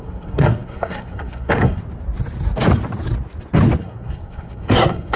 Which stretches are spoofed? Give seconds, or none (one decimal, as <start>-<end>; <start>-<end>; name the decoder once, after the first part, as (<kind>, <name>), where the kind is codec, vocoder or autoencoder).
0.0-1.8 (codec, SNAC); 3.8-5.2